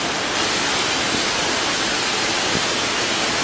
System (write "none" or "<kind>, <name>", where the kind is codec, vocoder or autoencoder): none